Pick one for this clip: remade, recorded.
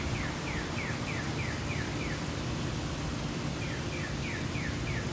recorded